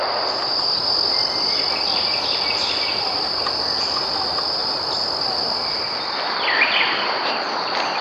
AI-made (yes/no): no